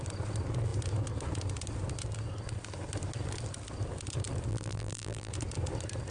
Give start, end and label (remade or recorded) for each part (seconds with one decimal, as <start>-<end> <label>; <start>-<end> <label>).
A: 0.0-4.5 recorded; 4.5-5.3 remade; 5.3-6.1 recorded

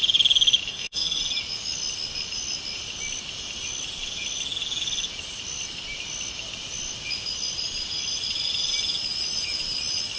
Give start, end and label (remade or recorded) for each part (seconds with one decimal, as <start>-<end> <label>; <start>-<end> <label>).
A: 0.0-0.7 recorded; 0.7-1.2 remade; 1.2-10.2 recorded

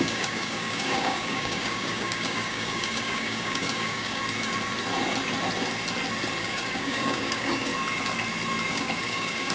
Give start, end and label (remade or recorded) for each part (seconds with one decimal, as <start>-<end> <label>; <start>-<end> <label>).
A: 0.0-4.2 remade; 4.2-6.4 recorded; 6.4-7.7 remade; 7.7-8.7 recorded; 8.7-9.5 remade

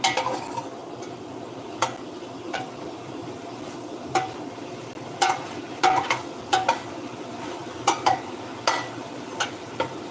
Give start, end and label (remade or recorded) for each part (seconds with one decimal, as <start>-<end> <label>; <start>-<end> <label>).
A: 0.0-7.6 recorded; 7.6-8.3 remade; 8.3-10.1 recorded

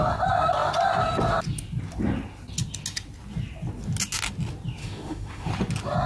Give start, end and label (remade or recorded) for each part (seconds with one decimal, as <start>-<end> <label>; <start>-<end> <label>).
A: 0.0-4.8 recorded; 4.8-5.5 remade; 5.5-6.1 recorded

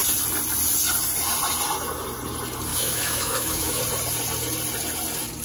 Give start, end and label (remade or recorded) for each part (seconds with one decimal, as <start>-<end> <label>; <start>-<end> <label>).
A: 0.0-2.7 recorded; 2.7-3.8 remade; 3.8-5.4 recorded